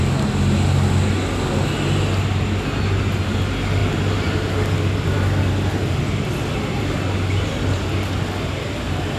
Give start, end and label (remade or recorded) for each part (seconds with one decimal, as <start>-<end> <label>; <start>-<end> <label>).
0.0-9.2 recorded